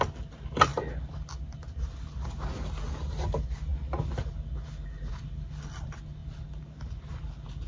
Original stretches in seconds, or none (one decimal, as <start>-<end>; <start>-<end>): 0.0-7.7